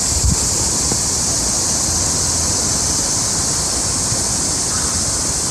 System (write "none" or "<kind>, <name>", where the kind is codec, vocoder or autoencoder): none